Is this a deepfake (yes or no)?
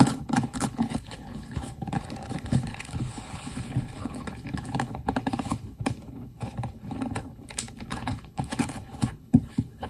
yes